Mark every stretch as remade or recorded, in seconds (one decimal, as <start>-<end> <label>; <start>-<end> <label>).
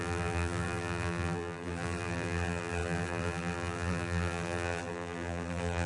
0.0-5.9 remade